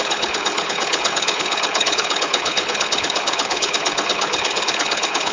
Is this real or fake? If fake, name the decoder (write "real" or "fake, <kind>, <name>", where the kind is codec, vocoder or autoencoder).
fake, codec, HILCodec